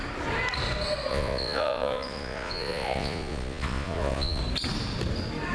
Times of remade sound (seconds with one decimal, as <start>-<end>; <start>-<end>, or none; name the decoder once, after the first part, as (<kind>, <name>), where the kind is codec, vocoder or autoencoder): 1.1-4.4 (vocoder, Vocos)